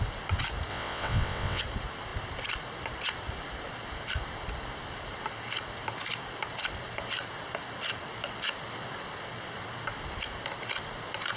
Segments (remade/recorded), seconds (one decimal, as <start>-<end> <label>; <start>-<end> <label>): 0.0-0.7 recorded; 0.7-1.6 remade; 1.6-11.4 recorded